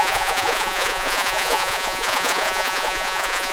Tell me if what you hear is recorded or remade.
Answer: remade